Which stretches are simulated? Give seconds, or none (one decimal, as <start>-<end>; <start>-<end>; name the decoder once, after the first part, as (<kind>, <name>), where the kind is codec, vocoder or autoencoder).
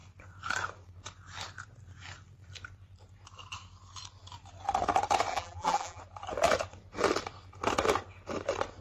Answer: 5.3-6.0 (vocoder, BigVGAN v2)